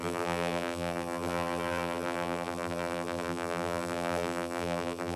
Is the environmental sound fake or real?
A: fake